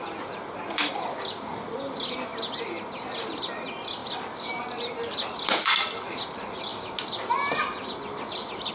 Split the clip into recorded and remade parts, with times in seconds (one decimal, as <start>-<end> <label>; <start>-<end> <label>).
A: 0.0-8.7 recorded